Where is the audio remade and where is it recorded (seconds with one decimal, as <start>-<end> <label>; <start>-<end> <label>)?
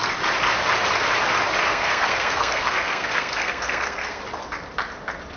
0.0-1.7 recorded; 1.7-4.2 remade; 4.2-5.4 recorded